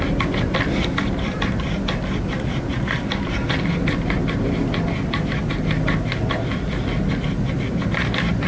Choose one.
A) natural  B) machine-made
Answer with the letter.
A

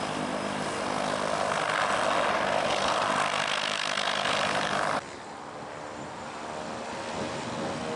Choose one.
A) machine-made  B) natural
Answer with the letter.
B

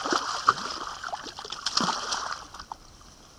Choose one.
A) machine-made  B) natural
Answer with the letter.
B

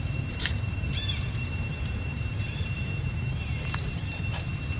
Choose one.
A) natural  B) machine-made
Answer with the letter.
B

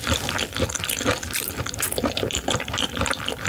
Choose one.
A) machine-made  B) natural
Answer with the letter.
A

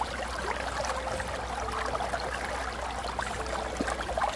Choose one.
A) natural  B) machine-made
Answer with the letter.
A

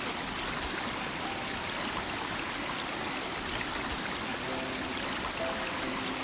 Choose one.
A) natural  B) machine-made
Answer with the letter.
A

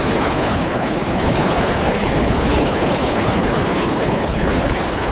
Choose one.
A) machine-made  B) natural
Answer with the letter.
A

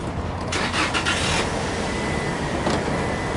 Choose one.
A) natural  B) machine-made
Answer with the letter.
A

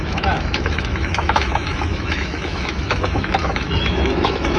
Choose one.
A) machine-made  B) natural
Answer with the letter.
A